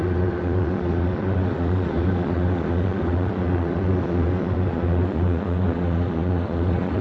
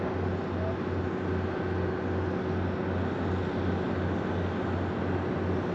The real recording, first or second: second